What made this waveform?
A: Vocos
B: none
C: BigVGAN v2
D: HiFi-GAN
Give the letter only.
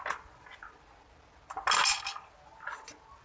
B